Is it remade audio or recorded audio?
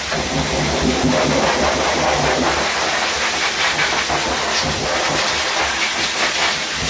recorded